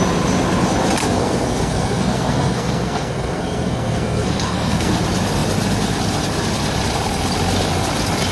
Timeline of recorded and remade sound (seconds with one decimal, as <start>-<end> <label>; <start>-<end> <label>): 0.0-1.0 recorded; 1.0-5.0 remade; 5.0-8.3 recorded